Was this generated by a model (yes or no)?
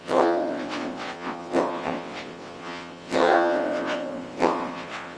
yes